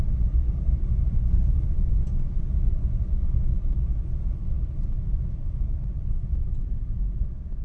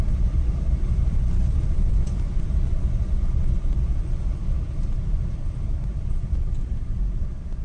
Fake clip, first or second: second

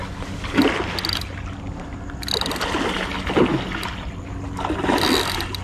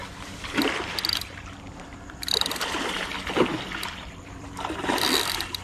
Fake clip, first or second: second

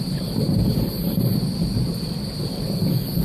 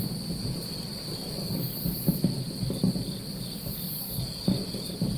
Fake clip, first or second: first